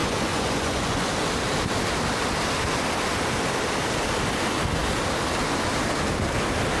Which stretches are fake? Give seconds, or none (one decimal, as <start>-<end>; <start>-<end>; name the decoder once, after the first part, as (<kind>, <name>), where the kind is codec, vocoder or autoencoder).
0.0-1.1 (vocoder, Vocos)